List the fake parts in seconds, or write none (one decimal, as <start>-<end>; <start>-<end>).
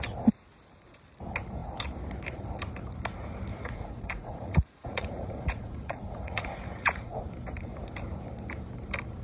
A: 3.5-7.2